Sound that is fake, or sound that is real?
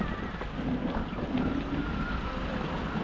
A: real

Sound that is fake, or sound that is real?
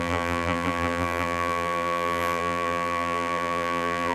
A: fake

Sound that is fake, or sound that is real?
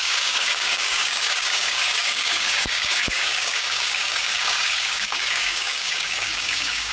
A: fake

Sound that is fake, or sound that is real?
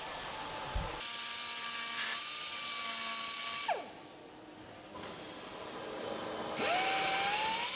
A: real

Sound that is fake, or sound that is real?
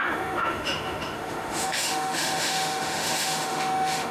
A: fake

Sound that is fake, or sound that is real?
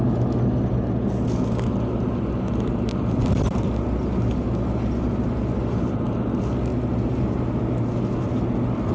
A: real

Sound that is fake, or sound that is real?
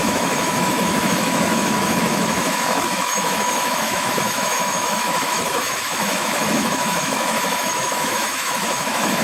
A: fake